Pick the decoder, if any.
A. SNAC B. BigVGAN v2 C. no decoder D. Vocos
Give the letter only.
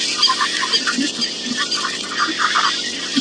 C